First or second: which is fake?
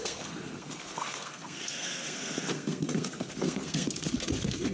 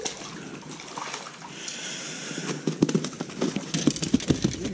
first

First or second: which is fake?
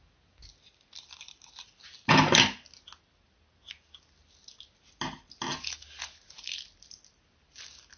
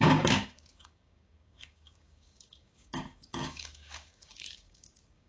second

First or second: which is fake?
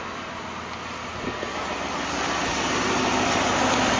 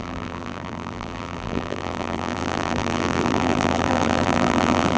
second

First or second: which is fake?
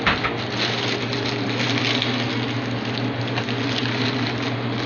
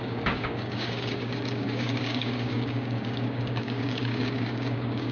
second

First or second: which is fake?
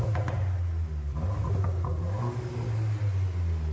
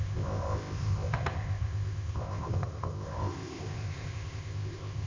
second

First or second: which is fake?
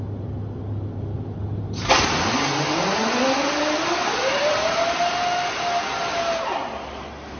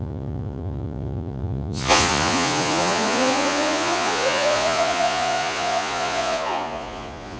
second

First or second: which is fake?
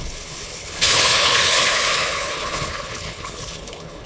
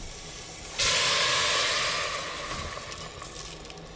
first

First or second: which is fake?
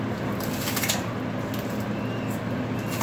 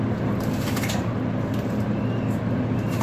second